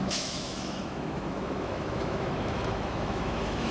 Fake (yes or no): yes